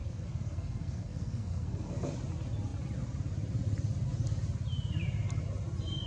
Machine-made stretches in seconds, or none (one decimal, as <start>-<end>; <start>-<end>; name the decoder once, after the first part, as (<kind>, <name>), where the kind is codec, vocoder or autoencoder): 0.0-2.1 (codec, SNAC)